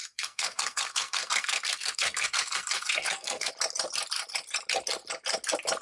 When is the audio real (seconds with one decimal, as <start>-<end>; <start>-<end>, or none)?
3.5-5.8